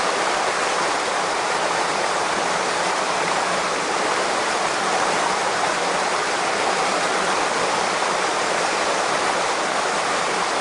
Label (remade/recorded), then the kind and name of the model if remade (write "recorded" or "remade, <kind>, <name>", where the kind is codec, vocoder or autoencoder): remade, vocoder, BigVGAN v2